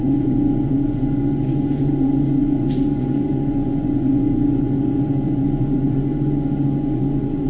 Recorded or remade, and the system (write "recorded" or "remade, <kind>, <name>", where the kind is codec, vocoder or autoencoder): remade, vocoder, Vocos